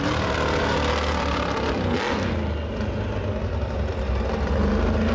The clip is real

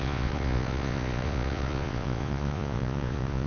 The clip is fake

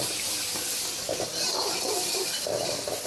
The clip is real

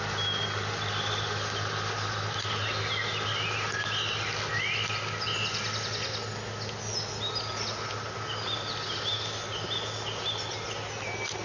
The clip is real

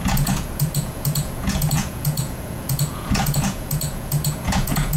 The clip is fake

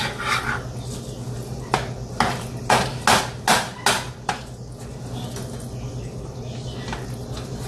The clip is real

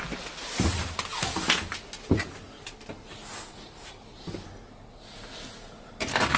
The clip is real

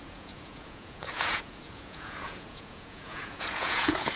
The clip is fake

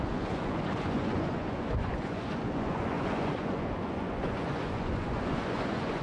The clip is fake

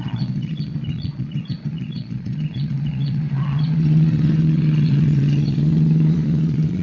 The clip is fake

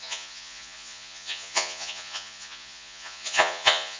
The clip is fake